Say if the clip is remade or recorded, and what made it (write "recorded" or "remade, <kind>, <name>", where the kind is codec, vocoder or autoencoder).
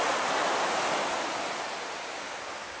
recorded